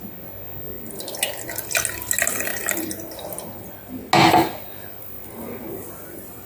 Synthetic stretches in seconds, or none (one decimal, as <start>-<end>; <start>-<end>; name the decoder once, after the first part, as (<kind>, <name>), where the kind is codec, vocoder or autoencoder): none